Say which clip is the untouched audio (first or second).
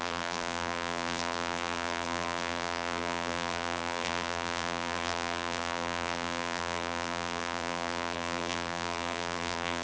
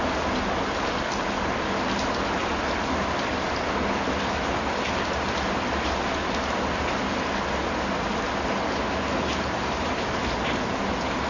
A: second